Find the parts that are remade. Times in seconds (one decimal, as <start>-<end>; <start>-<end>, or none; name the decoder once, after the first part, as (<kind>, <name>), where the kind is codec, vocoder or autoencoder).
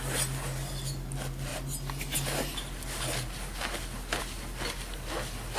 none